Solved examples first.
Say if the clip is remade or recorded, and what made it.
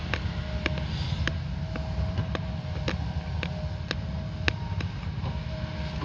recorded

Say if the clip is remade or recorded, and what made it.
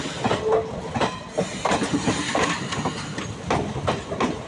recorded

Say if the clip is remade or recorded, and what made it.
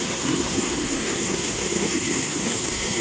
remade, codec, SNAC